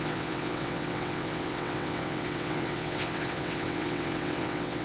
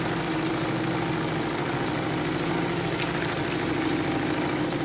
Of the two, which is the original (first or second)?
second